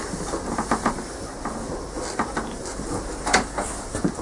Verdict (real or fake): real